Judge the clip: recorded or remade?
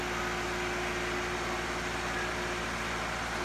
recorded